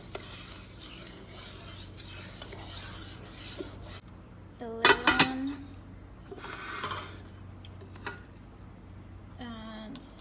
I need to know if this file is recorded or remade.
recorded